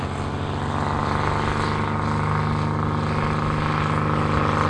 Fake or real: real